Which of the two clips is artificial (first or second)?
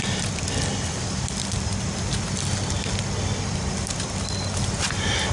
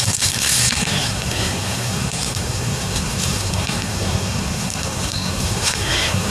second